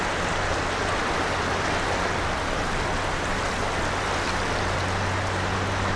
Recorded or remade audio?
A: recorded